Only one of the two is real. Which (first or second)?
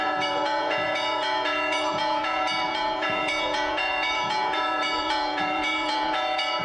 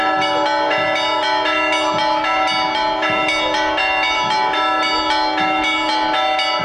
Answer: second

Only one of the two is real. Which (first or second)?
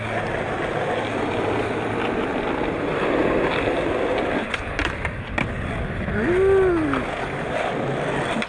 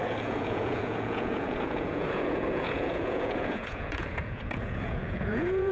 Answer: first